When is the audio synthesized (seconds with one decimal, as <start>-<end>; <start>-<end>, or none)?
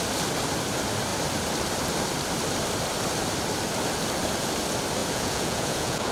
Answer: 5.0-6.1